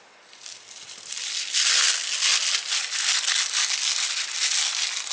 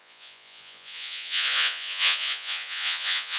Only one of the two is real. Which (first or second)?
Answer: first